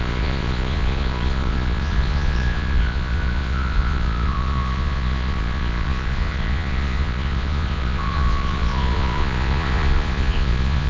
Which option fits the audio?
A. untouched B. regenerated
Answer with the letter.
B